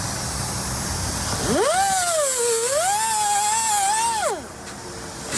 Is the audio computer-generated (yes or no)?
no